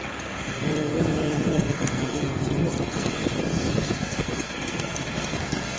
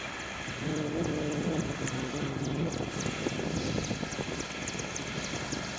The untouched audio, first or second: second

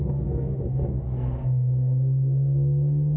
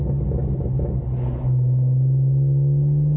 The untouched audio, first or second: second